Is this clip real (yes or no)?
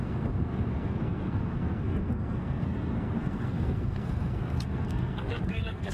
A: no